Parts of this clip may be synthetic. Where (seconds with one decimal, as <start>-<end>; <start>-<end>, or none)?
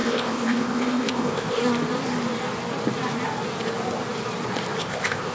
0.0-1.6; 4.8-5.3